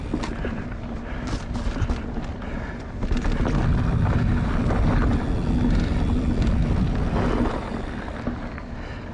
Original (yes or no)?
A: yes